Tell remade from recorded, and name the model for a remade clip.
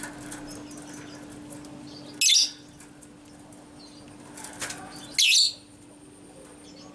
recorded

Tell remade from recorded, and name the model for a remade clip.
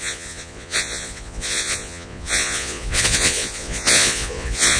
remade, vocoder, Vocos